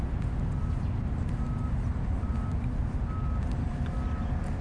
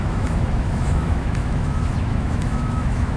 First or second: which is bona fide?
first